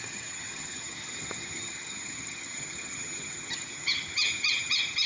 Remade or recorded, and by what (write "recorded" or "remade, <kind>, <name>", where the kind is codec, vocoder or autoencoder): remade, vocoder, HiFi-GAN